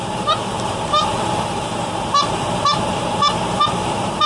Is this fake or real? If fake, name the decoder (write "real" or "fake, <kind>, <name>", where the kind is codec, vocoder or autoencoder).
fake, vocoder, BigVGAN v2